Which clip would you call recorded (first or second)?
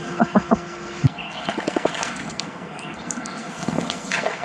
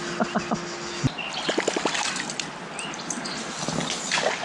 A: second